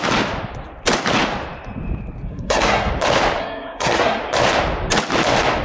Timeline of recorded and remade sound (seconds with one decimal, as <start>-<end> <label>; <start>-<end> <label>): 0.0-2.3 recorded; 2.3-2.9 remade; 2.9-3.4 recorded; 3.4-4.2 remade; 4.2-5.6 recorded